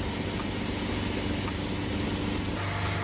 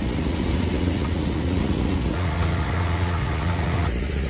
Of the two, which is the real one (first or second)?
first